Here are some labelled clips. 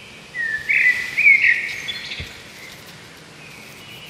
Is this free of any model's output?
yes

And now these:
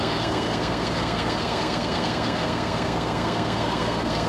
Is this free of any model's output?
no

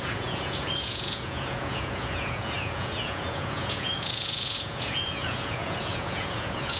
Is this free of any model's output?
no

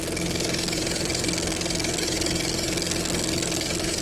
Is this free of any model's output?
no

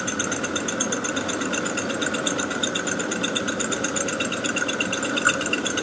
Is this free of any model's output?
yes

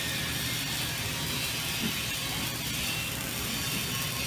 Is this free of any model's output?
yes